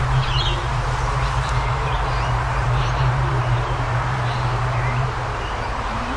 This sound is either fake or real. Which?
fake